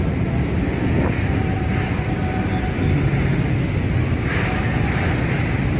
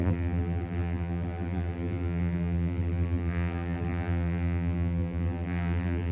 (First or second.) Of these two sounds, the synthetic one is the second